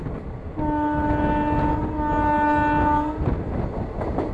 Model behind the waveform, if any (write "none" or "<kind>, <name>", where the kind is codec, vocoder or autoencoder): none